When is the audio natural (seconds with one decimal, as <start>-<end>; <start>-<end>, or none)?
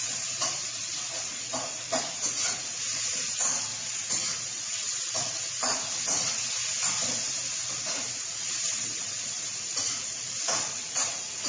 6.6-7.8